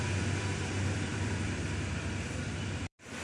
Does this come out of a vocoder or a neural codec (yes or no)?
yes